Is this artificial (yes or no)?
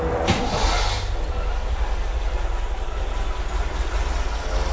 no